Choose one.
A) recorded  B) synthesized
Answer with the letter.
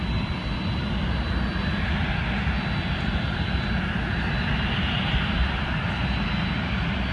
A